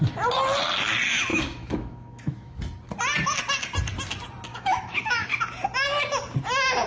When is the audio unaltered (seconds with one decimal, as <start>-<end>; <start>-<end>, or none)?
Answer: 0.0-1.3; 2.6-4.5; 5.4-6.9